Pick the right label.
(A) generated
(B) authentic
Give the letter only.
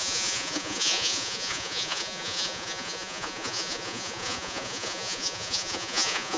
A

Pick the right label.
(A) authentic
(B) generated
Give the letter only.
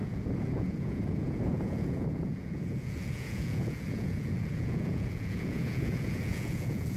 B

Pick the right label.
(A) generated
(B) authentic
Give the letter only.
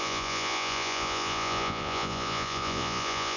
A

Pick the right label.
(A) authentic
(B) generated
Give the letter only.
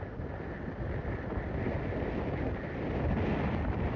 A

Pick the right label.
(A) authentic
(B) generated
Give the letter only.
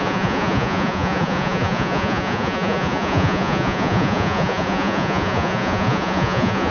B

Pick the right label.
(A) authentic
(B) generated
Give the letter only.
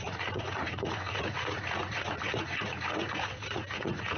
B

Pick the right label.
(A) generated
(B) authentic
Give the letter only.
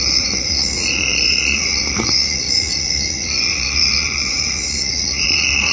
A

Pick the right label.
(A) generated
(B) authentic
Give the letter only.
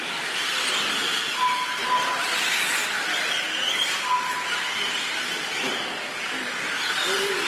B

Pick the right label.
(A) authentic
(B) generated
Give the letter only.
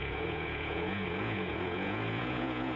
B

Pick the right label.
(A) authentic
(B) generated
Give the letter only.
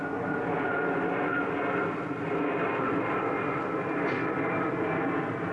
A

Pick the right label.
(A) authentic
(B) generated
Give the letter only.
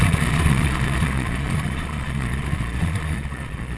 B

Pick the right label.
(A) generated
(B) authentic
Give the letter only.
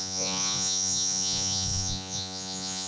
A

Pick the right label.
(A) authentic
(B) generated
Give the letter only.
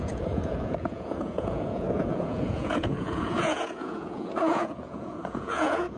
B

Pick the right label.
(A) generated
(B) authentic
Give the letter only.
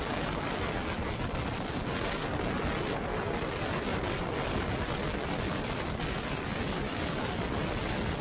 B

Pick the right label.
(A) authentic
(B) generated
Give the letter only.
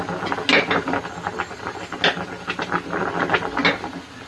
A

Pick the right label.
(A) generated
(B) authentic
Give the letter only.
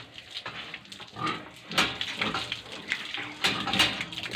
B